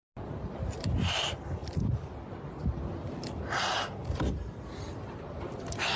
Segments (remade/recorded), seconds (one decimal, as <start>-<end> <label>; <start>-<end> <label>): 0.0-6.0 recorded